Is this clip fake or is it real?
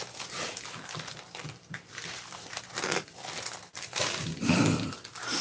fake